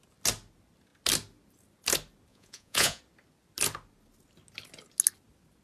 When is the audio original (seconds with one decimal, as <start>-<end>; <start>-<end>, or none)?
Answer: 0.0-2.3; 3.0-5.6